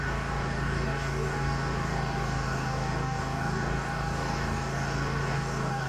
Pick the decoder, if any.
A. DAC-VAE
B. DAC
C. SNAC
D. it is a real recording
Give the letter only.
B